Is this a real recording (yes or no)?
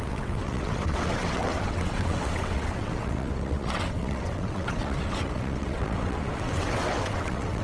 no